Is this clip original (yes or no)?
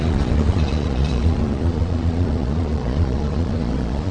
no